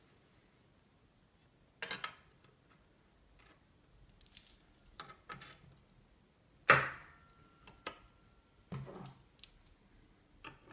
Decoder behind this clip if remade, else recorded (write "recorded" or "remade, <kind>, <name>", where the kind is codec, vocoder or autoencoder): recorded